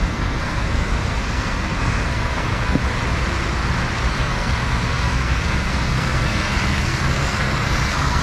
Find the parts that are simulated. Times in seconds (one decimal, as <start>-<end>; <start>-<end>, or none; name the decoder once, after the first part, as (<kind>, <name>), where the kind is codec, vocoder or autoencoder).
0.0-2.8 (codec, SNAC); 4.1-8.2